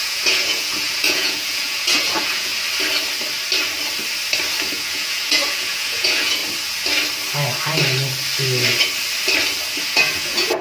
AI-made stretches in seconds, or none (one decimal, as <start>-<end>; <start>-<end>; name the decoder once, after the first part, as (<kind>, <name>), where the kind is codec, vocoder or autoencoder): 0.0-2.5 (vocoder, Vocos); 4.7-6.4; 9.8-10.6